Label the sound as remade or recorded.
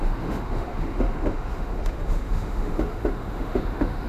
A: remade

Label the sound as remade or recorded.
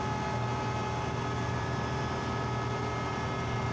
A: recorded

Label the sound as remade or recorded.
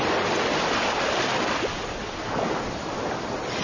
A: recorded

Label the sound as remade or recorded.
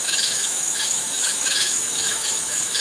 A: remade